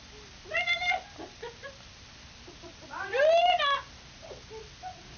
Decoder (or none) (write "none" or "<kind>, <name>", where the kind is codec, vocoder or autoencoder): none